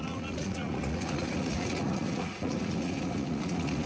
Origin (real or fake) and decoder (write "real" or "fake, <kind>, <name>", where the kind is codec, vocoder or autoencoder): fake, vocoder, Vocos